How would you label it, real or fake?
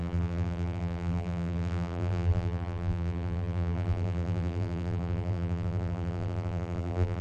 fake